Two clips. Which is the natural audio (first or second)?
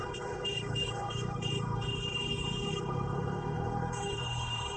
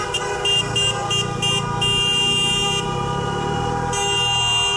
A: second